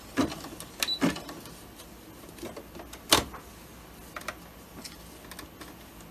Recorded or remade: recorded